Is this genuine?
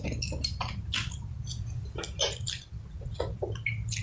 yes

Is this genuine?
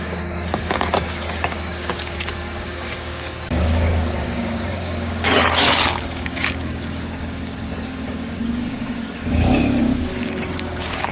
no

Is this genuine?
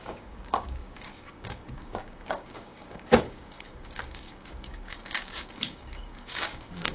no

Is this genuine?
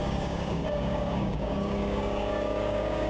no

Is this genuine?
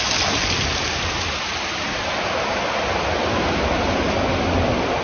yes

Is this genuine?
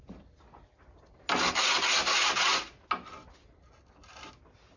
yes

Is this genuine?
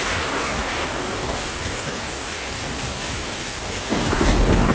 no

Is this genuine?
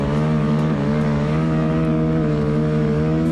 no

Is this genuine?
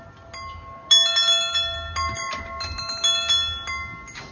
yes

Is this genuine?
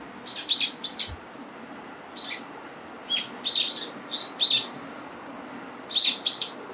yes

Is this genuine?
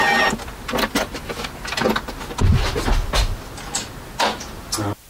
yes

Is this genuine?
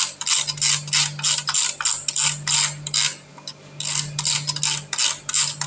yes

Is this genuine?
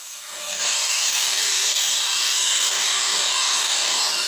no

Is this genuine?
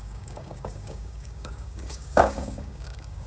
no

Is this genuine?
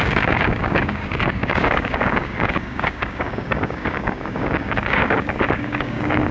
no